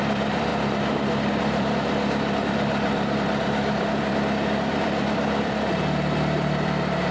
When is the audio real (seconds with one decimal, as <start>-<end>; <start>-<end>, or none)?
0.5-1.3